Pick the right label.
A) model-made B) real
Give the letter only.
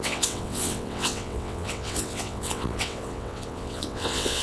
A